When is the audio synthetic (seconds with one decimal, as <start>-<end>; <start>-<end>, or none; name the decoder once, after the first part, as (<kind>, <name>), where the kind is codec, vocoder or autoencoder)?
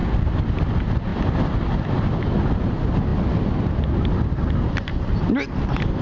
none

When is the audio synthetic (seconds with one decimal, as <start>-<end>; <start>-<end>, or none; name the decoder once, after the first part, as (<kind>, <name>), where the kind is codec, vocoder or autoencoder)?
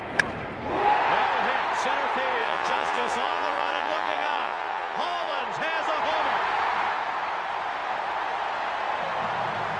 2.4-5.4 (vocoder, Vocos)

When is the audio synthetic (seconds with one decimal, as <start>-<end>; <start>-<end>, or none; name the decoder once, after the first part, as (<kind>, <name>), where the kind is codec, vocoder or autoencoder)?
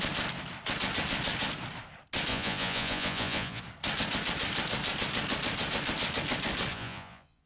2.3-3.6 (vocoder, Vocos); 6.7-7.5